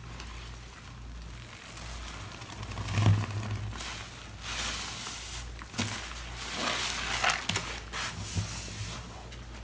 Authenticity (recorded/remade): recorded